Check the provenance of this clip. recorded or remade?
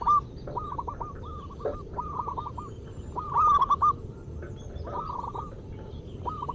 recorded